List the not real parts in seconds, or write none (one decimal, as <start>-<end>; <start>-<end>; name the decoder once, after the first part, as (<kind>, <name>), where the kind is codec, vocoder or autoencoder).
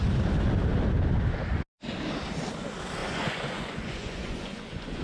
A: 3.0-5.0 (vocoder, Vocos)